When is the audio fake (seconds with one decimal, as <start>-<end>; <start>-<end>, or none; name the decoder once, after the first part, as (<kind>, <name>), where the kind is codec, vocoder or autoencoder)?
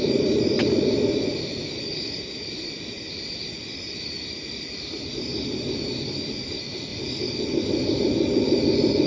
0.0-6.9 (vocoder, BigVGAN v2); 7.4-9.1